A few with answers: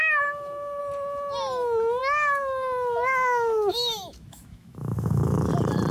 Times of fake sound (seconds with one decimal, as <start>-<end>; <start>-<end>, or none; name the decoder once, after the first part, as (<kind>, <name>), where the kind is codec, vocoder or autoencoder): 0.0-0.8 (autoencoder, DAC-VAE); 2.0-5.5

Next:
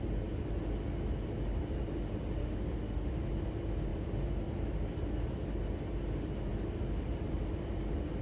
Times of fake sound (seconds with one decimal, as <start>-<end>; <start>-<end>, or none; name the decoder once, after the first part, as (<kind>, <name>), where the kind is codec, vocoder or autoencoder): 2.4-3.2 (autoencoder, DAC-VAE)

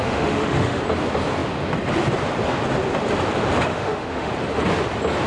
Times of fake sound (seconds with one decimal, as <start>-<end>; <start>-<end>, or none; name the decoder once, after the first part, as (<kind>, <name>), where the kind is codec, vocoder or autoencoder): 0.0-0.8 (autoencoder, DAC-VAE); 3.7-4.3

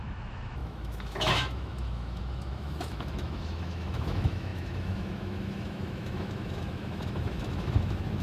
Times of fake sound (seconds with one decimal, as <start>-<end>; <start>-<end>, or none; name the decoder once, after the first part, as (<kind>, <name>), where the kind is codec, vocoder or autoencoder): 0.0-8.2 (autoencoder, DAC-VAE)

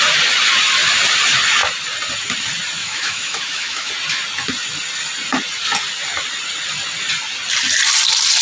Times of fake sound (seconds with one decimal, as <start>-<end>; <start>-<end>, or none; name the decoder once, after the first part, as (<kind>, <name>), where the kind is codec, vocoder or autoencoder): 2.8-3.9 (autoencoder, DAC-VAE)